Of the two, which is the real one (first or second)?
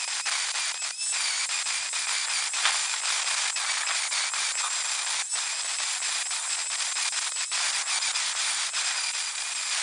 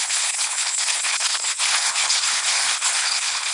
first